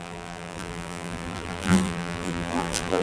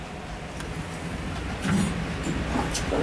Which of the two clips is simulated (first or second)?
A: first